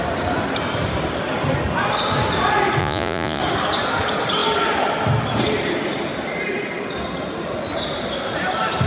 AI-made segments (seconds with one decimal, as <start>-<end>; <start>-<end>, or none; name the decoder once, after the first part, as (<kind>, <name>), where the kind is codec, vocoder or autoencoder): 2.8-3.4 (vocoder, Vocos)